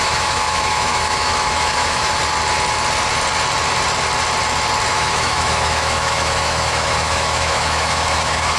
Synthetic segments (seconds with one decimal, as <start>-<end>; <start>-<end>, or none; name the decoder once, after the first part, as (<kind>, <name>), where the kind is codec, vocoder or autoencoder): 0.0-2.2 (autoencoder, DAC-VAE); 4.9-8.6